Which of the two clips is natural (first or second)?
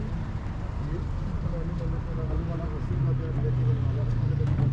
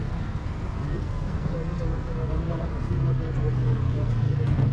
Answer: first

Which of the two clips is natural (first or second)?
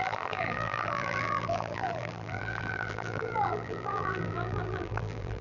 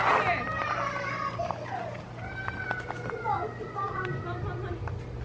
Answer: second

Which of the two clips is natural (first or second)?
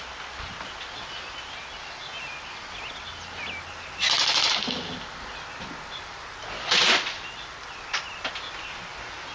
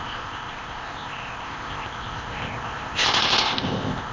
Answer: first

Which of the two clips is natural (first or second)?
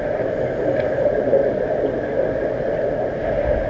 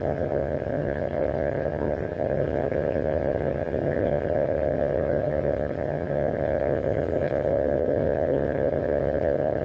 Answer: first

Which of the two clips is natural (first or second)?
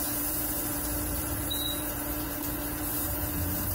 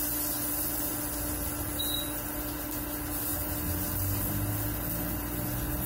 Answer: second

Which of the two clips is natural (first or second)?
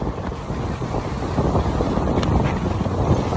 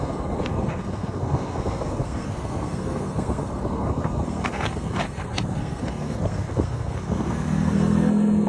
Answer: first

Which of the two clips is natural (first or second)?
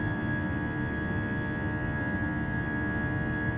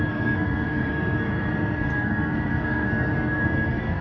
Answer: first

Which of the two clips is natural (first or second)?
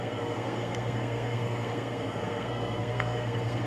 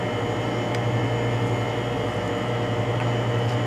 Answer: second